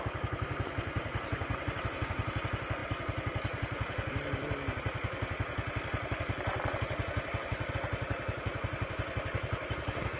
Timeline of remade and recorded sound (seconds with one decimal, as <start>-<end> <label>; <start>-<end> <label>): 0.0-10.2 recorded